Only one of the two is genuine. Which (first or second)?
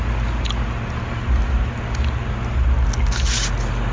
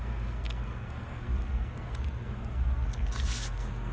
first